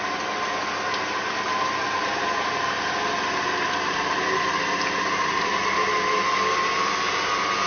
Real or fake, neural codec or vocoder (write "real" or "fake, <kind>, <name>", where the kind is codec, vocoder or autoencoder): real